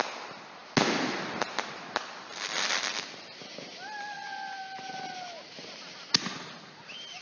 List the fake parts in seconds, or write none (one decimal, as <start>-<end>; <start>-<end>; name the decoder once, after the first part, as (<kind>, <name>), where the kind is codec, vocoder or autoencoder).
none